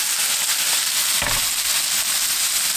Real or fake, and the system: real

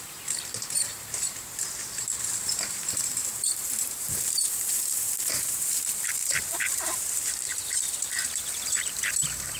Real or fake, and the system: fake, vocoder, BigVGAN v2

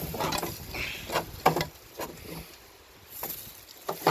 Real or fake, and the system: real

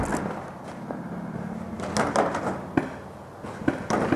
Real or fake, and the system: real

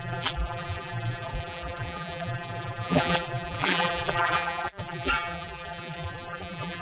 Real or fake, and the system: fake, vocoder, BigVGAN v2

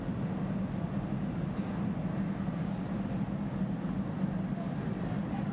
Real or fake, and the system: real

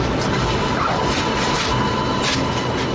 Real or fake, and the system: real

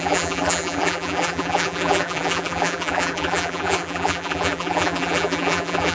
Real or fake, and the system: fake, vocoder, BigVGAN v2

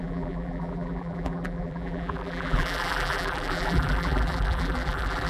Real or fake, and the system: fake, vocoder, BigVGAN v2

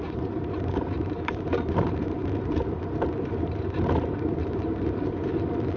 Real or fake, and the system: fake, vocoder, BigVGAN v2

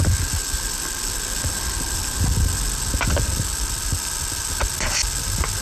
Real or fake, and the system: real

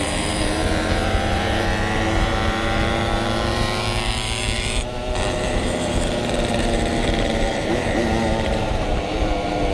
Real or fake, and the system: fake, vocoder, BigVGAN v2